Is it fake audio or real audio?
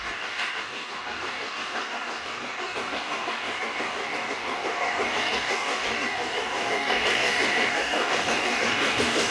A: fake